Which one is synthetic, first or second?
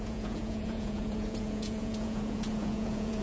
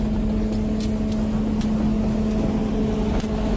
first